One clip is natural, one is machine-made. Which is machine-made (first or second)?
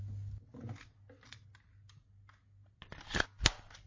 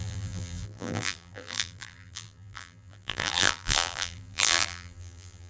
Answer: second